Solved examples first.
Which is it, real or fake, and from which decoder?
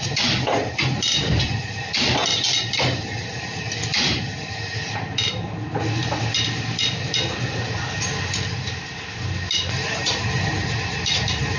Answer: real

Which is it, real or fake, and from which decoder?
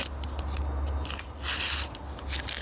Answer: real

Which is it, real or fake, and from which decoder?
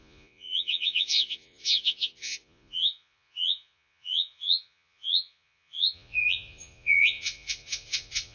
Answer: fake, vocoder, Vocos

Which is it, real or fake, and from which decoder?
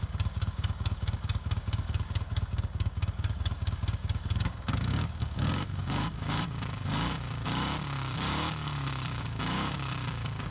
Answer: fake, codec, DAC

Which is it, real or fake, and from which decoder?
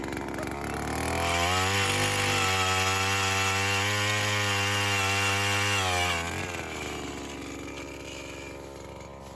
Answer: real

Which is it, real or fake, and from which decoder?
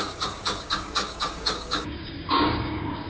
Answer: fake, codec, DAC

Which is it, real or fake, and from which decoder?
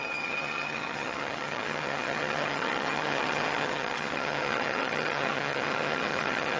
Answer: fake, vocoder, HiFi-GAN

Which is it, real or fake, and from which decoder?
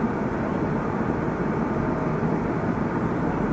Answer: fake, vocoder, BigVGAN v2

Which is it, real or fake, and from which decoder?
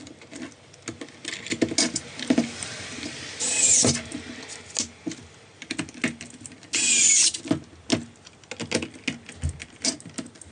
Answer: real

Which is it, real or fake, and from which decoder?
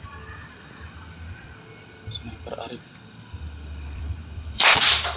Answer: fake, vocoder, BigVGAN v2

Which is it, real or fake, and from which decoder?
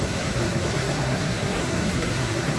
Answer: fake, codec, SNAC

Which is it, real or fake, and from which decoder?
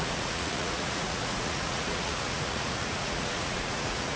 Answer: fake, vocoder, Vocos